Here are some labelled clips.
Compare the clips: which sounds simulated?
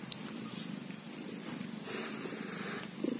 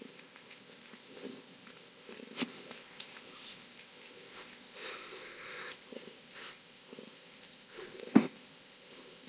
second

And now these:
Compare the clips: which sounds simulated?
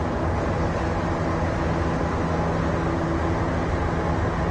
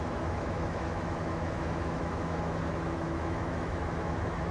second